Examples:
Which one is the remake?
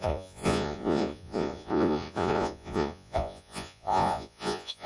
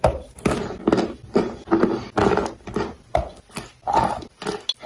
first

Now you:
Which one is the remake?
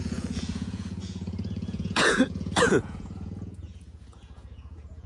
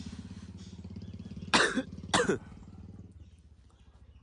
first